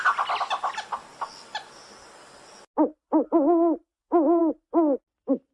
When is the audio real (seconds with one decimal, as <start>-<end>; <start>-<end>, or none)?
0.0-5.5